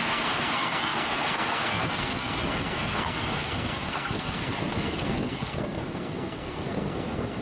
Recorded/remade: remade